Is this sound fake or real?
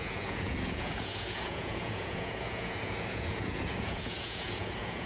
fake